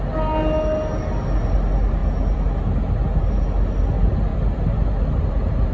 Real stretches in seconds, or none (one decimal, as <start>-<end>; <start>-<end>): 0.0-5.7